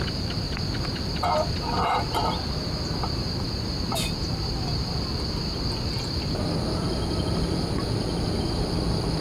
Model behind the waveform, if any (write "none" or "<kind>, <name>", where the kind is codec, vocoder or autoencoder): none